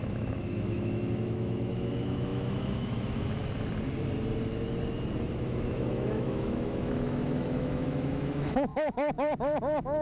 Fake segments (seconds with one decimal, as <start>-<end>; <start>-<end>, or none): 0.0-3.4; 5.3-10.0